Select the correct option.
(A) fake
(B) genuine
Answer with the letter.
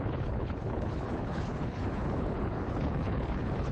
A